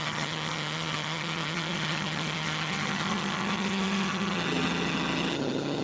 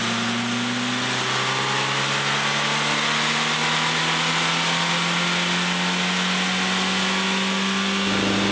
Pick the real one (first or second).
second